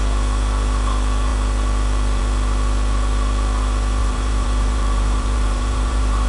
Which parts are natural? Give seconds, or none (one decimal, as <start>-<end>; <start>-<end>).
0.0-4.0